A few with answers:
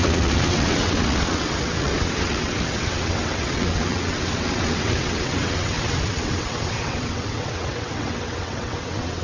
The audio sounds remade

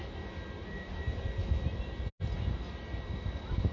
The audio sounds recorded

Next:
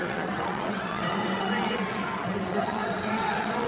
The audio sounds remade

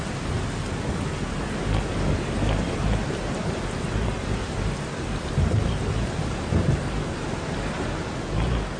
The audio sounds recorded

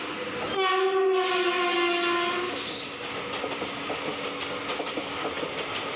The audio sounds recorded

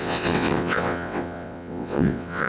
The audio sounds remade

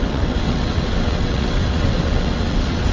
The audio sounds remade